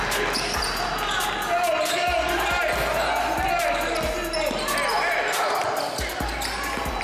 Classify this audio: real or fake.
real